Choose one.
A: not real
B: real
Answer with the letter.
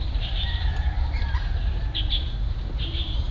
A